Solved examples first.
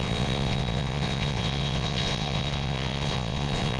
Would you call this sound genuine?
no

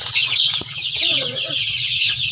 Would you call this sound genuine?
no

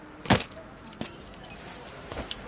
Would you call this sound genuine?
yes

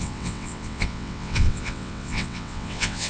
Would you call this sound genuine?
no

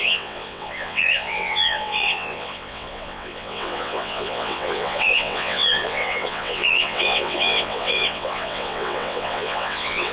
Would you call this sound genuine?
no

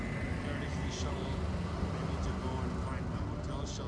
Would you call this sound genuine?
yes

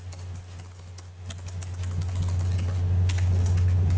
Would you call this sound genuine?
yes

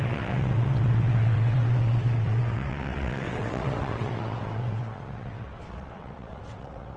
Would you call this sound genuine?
no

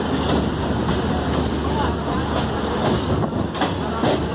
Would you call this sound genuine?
yes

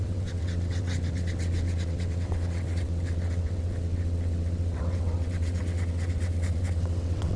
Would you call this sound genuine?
no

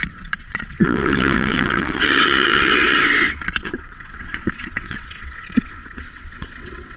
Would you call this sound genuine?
no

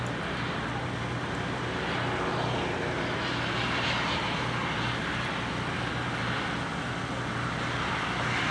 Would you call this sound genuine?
yes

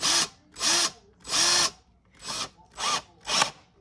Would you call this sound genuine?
yes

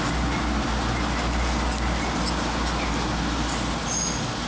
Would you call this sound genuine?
yes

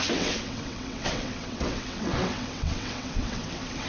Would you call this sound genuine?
no